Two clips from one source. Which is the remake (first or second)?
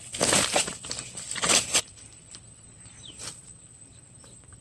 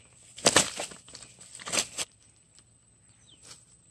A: first